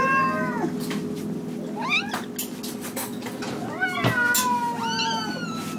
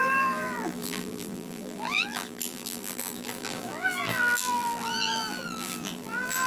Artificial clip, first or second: second